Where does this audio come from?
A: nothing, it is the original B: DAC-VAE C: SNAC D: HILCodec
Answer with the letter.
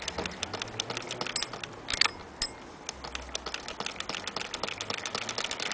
A